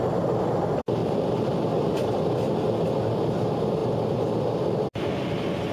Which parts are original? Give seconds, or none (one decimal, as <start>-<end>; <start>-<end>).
1.0-3.4; 3.8-5.7